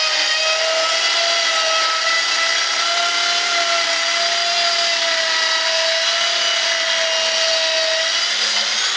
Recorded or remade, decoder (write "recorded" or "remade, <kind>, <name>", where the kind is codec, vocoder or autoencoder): recorded